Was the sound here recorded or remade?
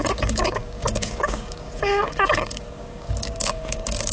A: remade